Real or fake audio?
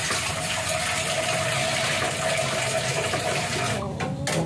real